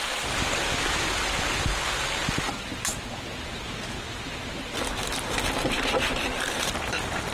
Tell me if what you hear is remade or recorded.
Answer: recorded